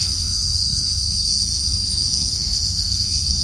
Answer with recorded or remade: remade